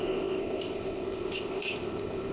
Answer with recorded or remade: remade